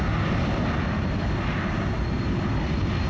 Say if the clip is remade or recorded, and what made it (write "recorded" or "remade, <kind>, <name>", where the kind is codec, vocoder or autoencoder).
recorded